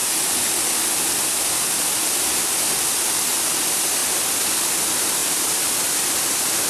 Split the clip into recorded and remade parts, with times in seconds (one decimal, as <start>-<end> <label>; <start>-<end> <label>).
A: 0.0-5.2 recorded; 5.2-5.7 remade; 5.7-6.7 recorded